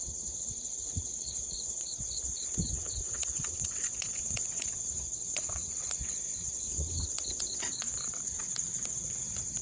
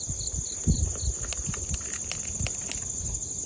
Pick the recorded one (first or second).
second